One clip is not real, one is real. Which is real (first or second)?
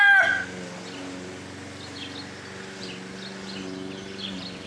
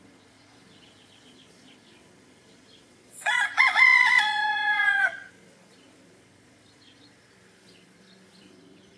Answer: first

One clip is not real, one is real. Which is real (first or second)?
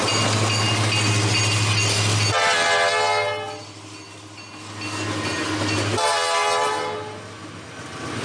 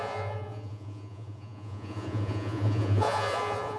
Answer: first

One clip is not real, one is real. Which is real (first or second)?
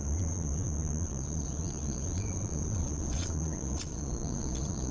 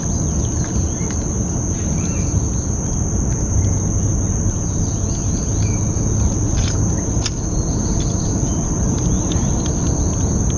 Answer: second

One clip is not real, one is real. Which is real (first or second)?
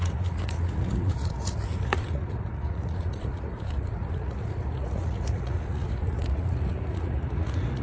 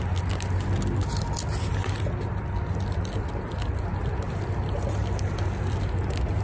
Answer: second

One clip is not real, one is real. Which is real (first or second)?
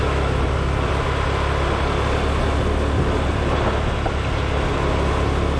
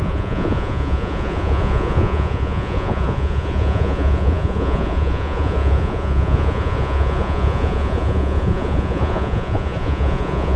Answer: first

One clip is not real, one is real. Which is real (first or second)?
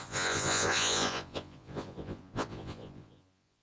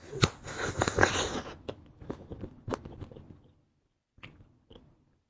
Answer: second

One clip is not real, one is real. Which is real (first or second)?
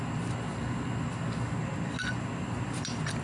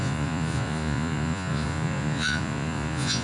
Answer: first